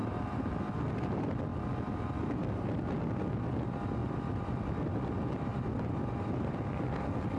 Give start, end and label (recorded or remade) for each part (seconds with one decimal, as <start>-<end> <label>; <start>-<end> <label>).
0.0-0.5 remade; 0.5-5.5 recorded; 5.5-6.6 remade; 6.6-7.4 recorded